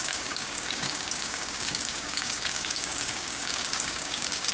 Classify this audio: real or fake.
fake